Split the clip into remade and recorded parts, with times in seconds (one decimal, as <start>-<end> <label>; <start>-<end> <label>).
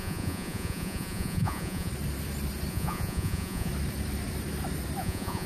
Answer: 0.0-1.9 remade; 1.9-2.7 recorded; 2.7-3.7 remade; 3.7-5.0 recorded; 5.0-5.5 remade